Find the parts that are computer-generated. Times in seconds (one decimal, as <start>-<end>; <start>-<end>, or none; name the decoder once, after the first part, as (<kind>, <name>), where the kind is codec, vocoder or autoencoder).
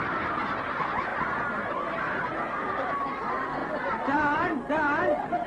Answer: none